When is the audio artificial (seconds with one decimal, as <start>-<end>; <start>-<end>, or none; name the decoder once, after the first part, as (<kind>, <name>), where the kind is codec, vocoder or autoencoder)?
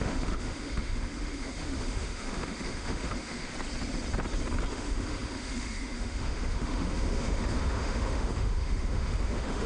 0.0-3.5 (autoencoder, DAC-VAE); 4.7-9.7